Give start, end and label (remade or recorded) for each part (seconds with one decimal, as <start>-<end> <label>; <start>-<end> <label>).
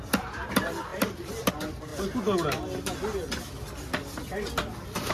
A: 0.0-1.9 remade; 1.9-5.1 recorded